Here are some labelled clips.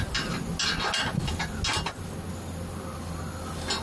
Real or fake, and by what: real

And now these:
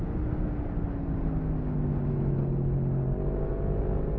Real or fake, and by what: real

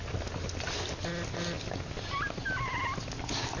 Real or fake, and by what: real